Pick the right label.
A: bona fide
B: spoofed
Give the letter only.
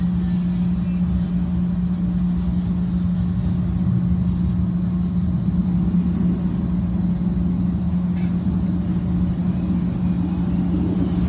A